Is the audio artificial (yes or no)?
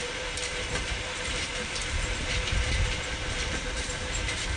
yes